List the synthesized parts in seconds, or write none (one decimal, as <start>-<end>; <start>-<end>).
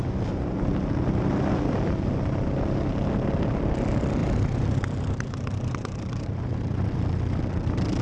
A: 4.2-6.9